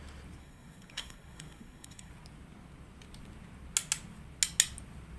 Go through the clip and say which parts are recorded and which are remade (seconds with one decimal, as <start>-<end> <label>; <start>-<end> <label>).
0.0-0.4 recorded; 0.4-2.1 remade; 2.1-5.2 recorded